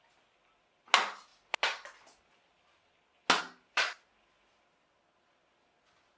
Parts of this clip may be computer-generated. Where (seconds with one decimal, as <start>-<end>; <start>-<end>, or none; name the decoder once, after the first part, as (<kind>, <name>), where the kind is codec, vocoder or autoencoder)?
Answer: none